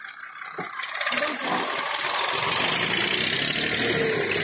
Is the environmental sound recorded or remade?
recorded